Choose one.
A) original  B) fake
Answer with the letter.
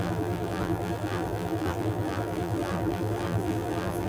B